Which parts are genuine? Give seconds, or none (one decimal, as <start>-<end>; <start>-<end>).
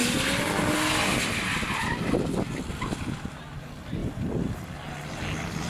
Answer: 0.0-5.7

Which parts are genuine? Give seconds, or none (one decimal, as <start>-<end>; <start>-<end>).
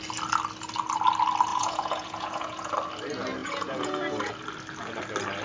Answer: 0.0-1.5; 2.7-3.4; 4.3-5.4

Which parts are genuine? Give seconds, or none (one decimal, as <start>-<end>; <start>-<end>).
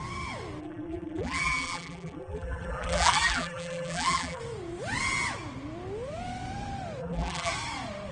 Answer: 0.0-0.6; 4.4-7.0; 7.5-8.1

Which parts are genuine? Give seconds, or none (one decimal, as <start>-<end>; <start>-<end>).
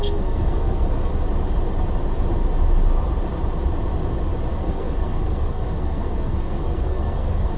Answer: 1.1-4.5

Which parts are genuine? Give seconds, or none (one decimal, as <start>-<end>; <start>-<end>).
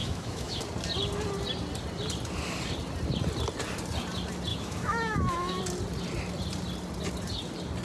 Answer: 0.6-4.5; 5.6-7.8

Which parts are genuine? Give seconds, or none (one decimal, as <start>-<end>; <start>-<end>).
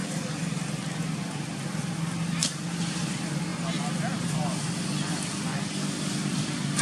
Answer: 3.5-5.7